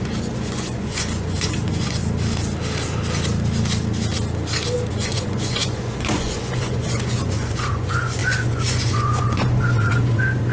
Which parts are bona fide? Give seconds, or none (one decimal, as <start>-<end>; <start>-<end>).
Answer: 2.0-4.9